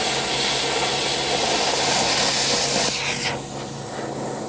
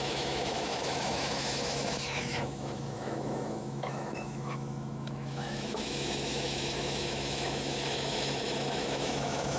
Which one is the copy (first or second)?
second